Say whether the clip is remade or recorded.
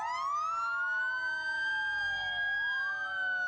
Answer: recorded